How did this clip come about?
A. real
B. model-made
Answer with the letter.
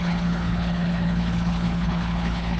B